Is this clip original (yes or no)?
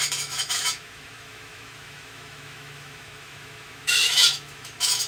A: no